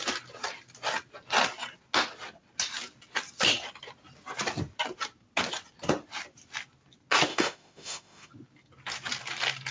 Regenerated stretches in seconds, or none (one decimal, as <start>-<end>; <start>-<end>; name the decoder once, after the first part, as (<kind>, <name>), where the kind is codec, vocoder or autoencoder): 7.3-8.3 (autoencoder, DAC-VAE)